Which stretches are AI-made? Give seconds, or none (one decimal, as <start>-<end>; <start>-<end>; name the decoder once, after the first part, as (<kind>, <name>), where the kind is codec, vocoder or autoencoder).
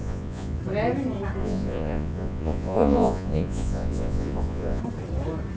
0.0-0.6 (vocoder, Vocos); 1.4-4.8